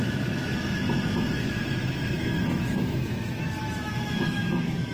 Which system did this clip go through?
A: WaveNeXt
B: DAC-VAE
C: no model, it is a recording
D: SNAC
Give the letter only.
B